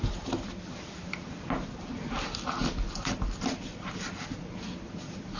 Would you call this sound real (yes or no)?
yes